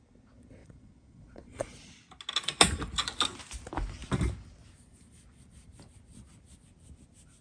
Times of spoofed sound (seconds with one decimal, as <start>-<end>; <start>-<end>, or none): 0.6-1.7